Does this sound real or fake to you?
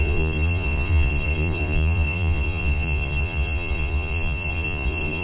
fake